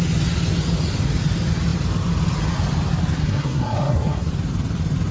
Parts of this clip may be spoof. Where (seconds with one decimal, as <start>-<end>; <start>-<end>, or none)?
3.2-4.3